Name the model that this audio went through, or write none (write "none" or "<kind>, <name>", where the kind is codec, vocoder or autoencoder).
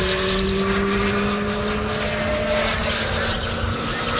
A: none